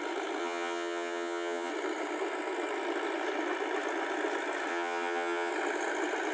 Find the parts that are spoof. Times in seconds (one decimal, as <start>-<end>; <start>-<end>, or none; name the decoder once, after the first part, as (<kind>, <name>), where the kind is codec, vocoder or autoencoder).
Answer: 0.4-1.7 (vocoder, HiFi-GAN); 4.7-5.5